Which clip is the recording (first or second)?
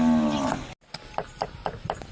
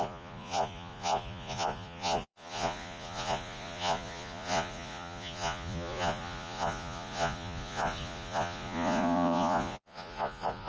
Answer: first